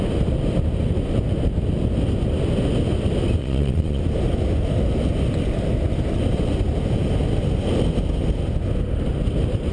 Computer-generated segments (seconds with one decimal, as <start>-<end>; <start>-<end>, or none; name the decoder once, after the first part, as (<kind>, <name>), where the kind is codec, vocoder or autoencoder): 3.4-4.0 (vocoder, Vocos)